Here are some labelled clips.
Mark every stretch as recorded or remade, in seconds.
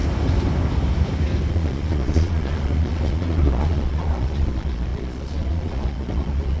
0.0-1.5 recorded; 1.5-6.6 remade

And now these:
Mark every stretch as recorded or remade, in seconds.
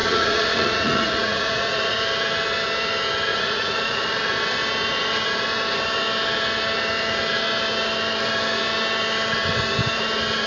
0.0-2.0 remade; 2.0-3.3 recorded; 3.3-4.0 remade; 4.0-10.5 recorded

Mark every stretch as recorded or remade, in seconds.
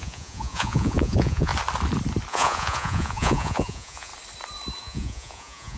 0.0-1.5 remade; 1.5-2.3 recorded; 2.3-4.1 remade; 4.1-4.8 recorded; 4.8-5.8 remade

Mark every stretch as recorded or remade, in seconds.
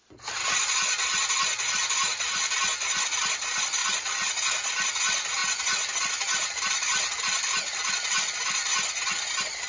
0.0-3.8 recorded; 3.8-4.5 remade; 4.5-9.7 recorded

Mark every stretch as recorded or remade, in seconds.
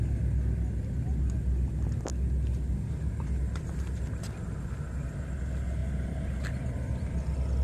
0.0-7.6 recorded